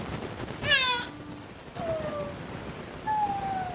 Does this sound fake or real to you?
real